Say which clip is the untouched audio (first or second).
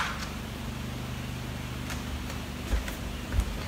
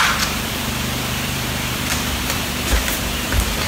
first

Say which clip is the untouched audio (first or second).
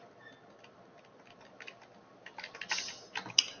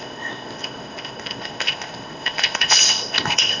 first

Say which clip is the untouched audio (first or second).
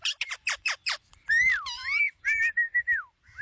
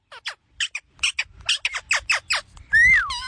second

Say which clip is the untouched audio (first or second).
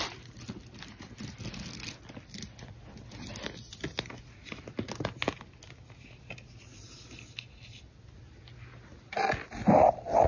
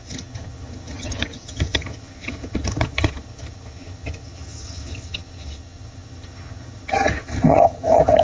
first